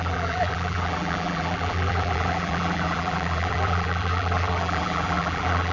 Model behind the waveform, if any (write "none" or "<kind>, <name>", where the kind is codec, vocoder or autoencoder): vocoder, BigVGAN v2